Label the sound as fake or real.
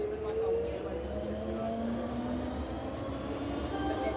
real